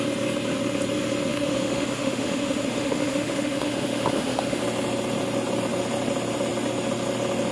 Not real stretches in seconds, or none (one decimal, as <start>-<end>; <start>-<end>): 1.3-4.6